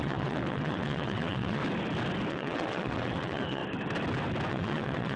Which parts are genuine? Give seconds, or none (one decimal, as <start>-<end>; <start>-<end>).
1.6-2.3; 3.6-4.5